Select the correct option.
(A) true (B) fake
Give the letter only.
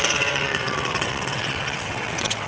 B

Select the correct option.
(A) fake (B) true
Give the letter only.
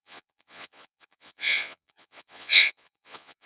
A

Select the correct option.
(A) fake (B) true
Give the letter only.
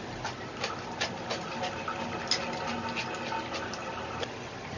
B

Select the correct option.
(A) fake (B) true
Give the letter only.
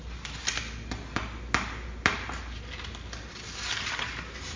B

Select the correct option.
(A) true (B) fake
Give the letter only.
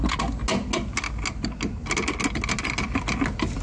A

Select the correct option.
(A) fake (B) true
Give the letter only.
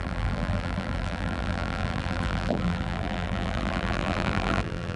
A